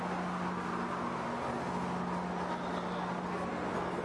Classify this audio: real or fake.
real